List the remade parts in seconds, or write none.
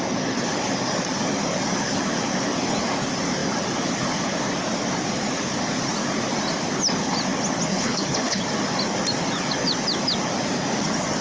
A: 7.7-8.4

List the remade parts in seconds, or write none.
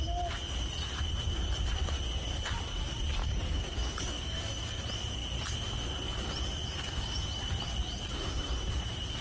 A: 3.2-4.4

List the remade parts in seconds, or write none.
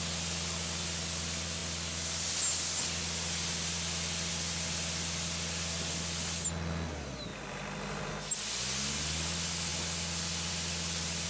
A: 7.3-8.1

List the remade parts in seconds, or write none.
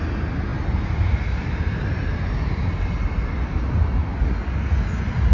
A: none